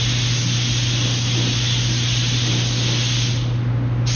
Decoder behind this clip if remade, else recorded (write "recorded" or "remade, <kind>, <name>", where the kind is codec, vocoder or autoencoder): recorded